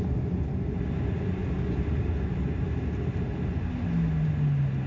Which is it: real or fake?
real